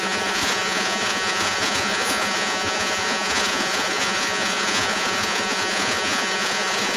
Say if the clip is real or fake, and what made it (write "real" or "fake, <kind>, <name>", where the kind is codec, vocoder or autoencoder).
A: fake, vocoder, Vocos